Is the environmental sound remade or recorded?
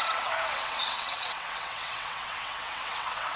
remade